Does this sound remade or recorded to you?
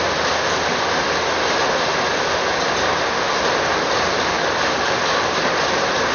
recorded